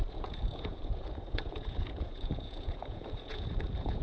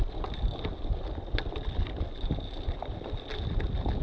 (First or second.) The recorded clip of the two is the second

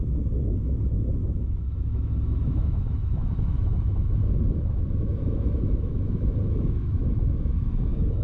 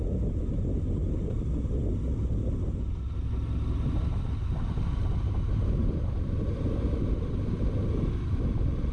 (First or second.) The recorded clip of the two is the second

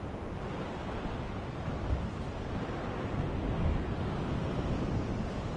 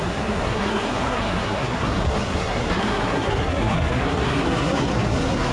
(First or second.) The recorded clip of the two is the first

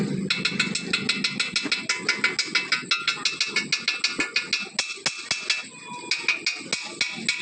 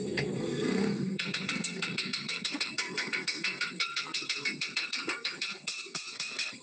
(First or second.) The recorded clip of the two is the first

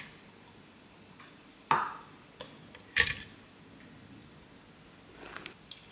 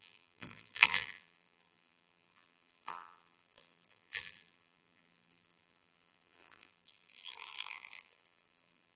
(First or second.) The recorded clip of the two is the first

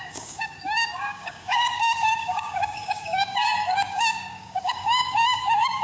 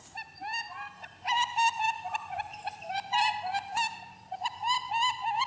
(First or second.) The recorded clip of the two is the second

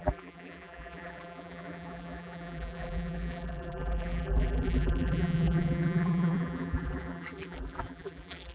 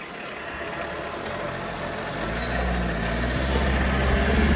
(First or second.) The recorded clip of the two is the second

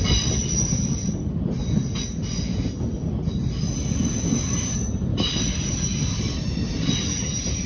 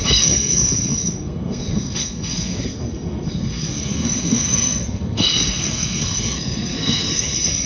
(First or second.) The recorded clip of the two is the first